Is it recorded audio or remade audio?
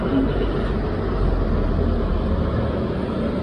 recorded